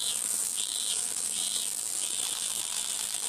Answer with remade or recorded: remade